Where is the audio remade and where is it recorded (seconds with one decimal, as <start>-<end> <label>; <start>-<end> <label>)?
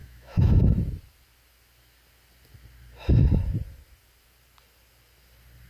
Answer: 0.0-0.6 remade; 0.6-5.7 recorded